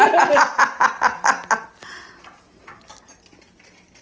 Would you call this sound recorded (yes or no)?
yes